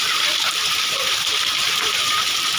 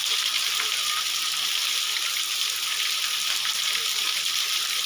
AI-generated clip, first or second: first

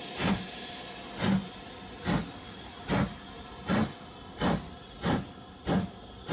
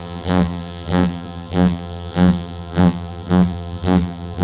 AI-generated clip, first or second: second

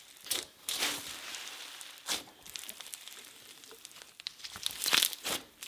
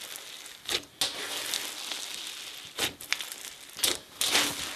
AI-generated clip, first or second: first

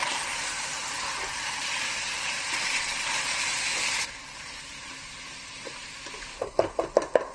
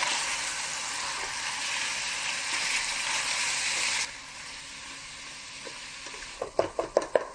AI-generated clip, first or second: first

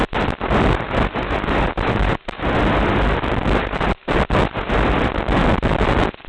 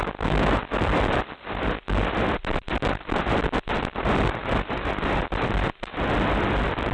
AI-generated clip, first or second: second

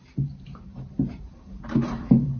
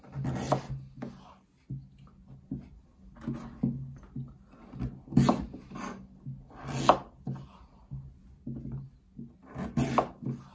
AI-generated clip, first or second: first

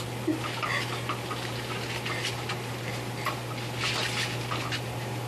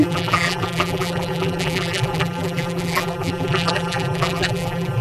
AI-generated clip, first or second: second